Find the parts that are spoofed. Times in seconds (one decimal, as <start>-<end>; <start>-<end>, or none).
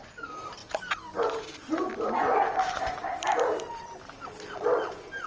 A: 0.0-0.6; 3.8-5.3